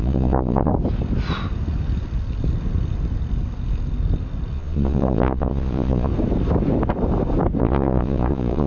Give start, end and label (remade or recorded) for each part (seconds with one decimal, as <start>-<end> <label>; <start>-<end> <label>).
0.0-0.7 remade; 0.7-4.5 recorded; 4.5-6.1 remade; 6.1-7.6 recorded; 7.6-8.7 remade